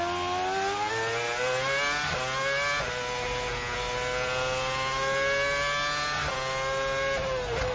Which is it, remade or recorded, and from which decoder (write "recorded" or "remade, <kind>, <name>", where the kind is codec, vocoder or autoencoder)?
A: recorded